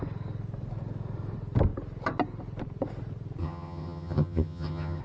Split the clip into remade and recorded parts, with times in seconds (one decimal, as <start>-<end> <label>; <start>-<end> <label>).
0.0-3.4 recorded; 3.4-5.0 remade

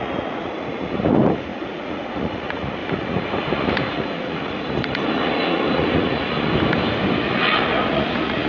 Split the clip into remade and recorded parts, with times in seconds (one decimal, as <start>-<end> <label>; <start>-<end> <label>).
0.0-6.5 remade; 6.5-7.2 recorded; 7.2-8.5 remade

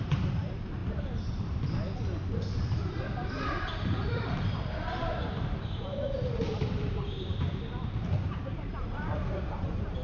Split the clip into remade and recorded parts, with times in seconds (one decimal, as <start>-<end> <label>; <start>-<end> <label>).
0.0-0.8 remade; 0.8-2.6 recorded; 2.6-10.0 remade

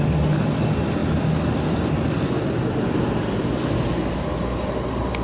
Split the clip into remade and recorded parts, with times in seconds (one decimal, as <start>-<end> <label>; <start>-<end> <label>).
0.0-5.2 recorded

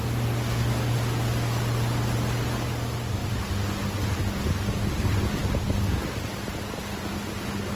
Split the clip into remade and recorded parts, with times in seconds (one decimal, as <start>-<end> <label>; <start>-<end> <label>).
0.0-7.8 recorded

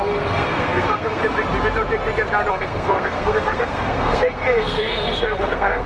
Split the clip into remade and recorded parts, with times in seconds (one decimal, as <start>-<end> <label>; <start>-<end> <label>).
0.0-1.2 remade; 1.2-2.5 recorded; 2.5-5.9 remade